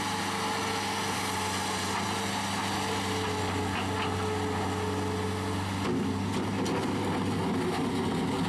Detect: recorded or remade recorded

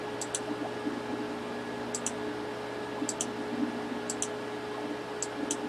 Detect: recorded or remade recorded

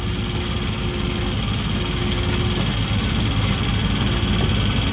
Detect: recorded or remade recorded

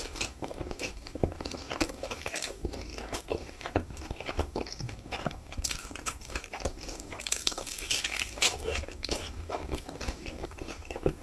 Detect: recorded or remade remade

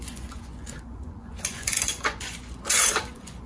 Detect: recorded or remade remade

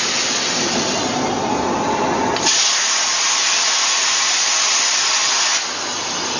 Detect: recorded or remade recorded